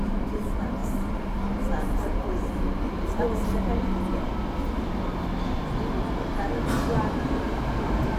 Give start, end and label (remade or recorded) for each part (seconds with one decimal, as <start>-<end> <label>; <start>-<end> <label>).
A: 0.0-3.7 remade; 3.7-7.2 recorded; 7.2-8.2 remade